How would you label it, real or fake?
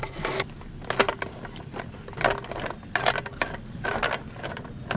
real